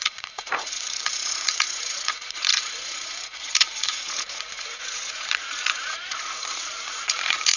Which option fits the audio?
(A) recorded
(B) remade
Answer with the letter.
B